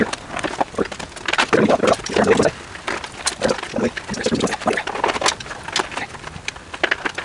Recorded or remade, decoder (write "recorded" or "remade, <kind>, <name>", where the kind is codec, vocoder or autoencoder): recorded